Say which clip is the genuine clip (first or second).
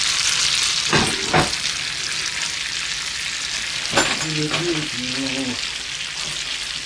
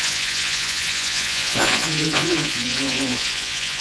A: first